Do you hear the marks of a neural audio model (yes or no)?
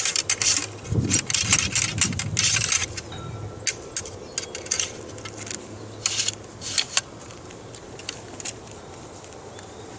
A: no